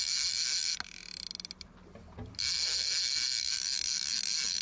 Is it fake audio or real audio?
real